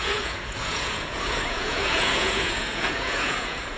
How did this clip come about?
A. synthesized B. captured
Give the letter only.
A